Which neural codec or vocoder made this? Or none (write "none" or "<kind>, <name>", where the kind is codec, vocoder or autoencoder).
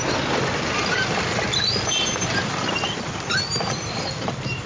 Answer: none